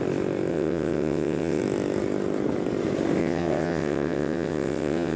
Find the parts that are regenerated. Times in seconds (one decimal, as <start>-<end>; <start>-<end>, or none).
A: 0.5-1.6; 3.2-5.2